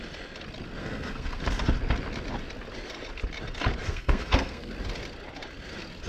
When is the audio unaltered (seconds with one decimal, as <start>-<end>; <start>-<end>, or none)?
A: 0.0-0.8; 1.4-3.8; 4.7-6.1